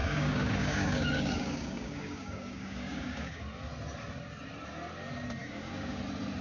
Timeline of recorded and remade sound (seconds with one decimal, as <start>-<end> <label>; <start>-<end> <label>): 0.0-3.4 remade; 3.4-5.4 recorded; 5.4-6.0 remade; 6.0-6.4 recorded